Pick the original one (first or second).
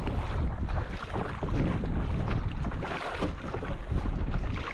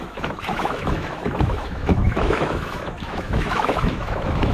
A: first